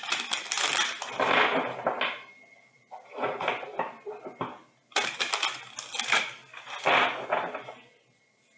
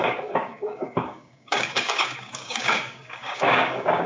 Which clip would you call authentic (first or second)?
first